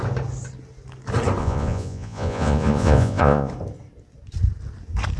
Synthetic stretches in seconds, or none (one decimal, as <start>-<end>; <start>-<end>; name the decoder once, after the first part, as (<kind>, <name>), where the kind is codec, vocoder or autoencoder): 1.4-3.5 (vocoder, Vocos)